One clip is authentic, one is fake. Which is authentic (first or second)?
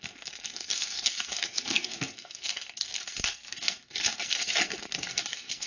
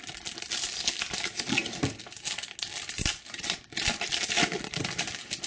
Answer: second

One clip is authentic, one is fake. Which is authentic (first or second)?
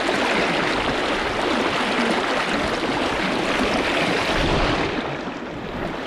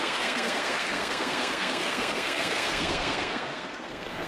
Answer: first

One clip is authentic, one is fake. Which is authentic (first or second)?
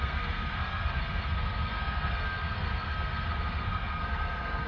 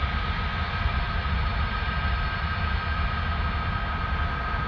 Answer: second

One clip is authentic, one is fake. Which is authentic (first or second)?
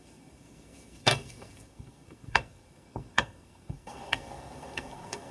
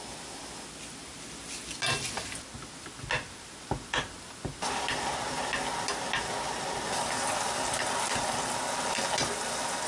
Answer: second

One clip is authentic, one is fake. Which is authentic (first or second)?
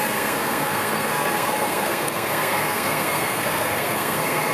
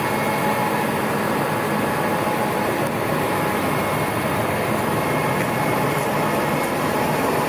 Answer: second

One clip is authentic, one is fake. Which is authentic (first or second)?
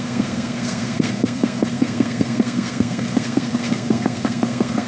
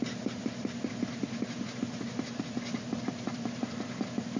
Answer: second